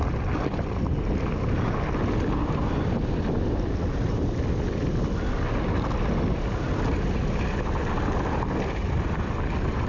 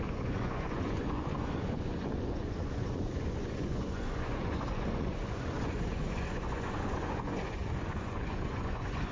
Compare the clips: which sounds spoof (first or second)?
second